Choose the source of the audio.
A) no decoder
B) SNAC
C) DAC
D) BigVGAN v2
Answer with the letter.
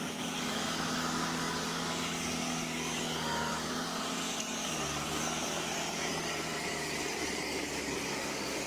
C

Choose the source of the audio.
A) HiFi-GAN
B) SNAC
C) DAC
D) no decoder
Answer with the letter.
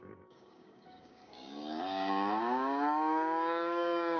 C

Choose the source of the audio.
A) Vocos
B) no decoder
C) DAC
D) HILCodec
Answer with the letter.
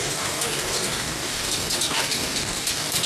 C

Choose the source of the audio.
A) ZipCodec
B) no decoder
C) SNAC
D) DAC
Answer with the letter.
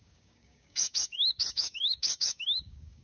D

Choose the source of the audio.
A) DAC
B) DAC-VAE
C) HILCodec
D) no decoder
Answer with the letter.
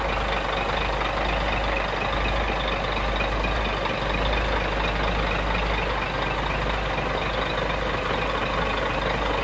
D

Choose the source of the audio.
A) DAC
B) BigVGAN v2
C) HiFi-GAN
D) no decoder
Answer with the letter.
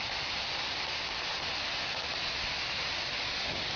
D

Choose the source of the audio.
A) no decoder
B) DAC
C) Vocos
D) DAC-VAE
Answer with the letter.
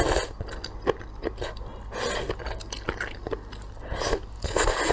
A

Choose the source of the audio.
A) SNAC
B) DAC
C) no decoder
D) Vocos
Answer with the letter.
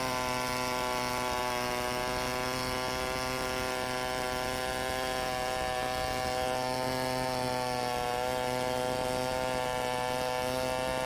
C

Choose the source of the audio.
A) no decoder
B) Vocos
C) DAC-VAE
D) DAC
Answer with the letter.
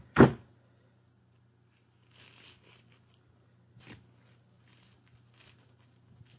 A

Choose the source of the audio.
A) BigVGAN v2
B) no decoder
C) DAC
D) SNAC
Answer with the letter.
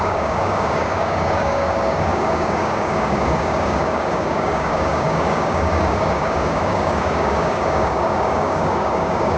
C